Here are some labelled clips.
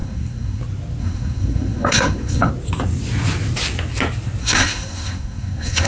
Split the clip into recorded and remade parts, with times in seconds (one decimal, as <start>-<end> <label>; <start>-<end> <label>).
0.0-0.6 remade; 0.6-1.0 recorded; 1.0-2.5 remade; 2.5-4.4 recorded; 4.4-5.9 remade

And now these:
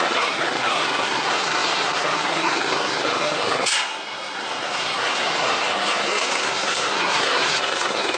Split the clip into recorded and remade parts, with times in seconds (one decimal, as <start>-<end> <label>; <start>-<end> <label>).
0.0-8.2 remade

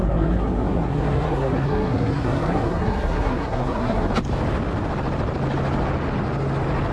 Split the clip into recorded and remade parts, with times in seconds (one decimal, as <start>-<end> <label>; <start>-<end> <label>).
0.0-4.1 remade; 4.1-6.9 recorded

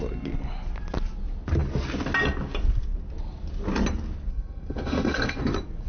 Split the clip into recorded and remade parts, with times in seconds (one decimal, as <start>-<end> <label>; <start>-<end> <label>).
0.0-4.3 recorded; 4.3-5.4 remade; 5.4-5.9 recorded